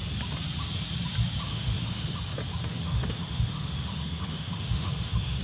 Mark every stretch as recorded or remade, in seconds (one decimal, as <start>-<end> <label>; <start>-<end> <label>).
0.0-1.5 recorded; 1.5-2.1 remade; 2.1-2.7 recorded; 2.7-5.4 remade